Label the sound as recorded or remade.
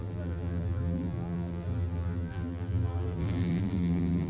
remade